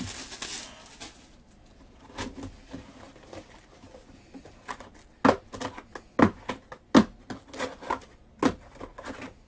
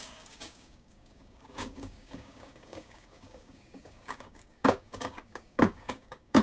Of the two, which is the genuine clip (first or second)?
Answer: first